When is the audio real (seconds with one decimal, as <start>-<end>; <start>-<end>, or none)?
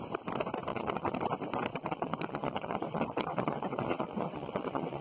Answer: 0.0-0.7; 1.2-1.7